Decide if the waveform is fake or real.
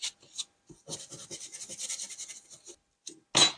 real